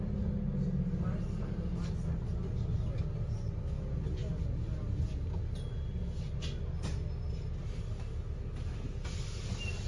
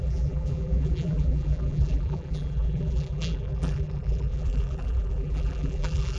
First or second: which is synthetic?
second